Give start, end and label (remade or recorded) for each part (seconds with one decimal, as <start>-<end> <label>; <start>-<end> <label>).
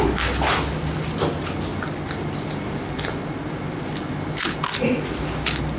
0.0-5.8 recorded